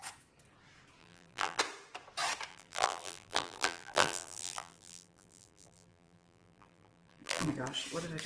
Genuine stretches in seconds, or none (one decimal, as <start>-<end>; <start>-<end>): 0.0-1.0; 1.6-2.5; 7.5-8.3